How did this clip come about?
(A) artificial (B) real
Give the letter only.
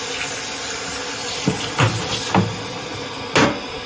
B